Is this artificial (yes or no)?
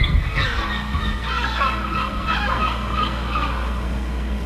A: yes